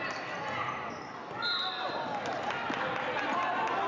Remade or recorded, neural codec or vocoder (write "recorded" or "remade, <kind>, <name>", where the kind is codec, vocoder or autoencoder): recorded